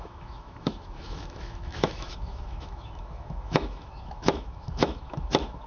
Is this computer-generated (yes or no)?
yes